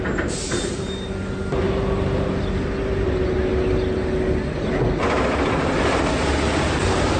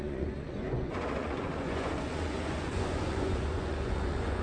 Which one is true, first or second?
first